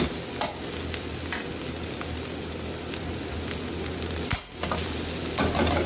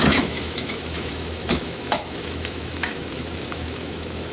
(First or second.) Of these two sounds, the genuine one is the first